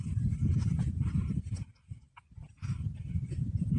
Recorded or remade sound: recorded